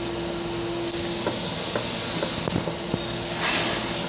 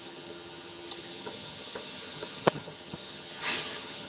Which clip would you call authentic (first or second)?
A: first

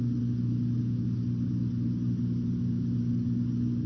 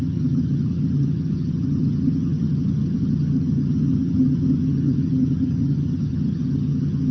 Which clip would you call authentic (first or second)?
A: first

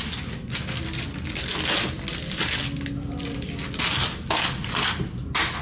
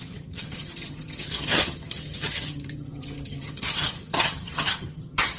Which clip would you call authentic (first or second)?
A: first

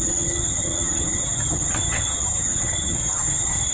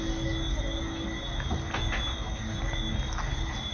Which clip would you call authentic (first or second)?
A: second